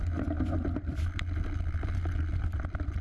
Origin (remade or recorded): recorded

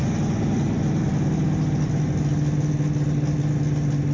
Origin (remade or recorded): recorded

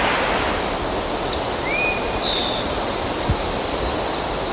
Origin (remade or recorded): recorded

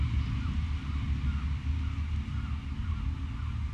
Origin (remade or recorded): recorded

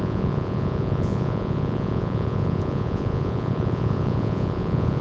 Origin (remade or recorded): remade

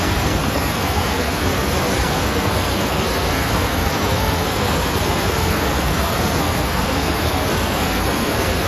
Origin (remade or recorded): remade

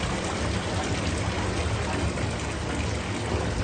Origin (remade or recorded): recorded